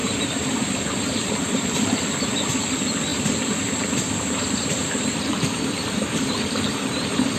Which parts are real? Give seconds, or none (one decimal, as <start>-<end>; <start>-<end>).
2.1-3.1